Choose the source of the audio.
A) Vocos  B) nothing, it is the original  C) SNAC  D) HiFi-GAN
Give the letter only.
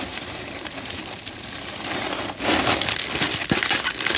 B